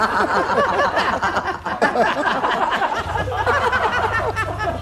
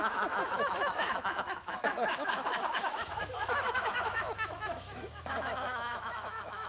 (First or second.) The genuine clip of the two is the first